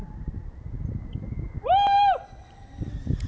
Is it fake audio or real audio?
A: real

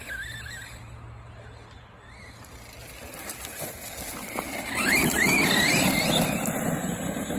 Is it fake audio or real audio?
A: real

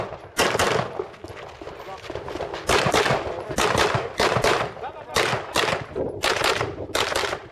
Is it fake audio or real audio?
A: real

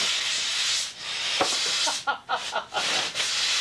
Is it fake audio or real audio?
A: real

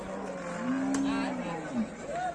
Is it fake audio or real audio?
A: real